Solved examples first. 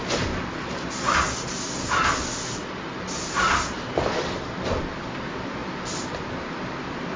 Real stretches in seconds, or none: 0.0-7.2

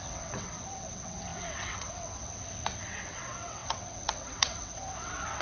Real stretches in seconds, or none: none

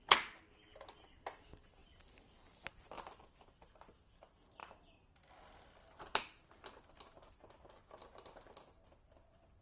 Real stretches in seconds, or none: 0.0-9.6

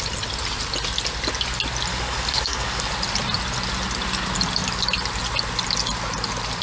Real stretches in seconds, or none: 0.0-1.9; 2.9-6.6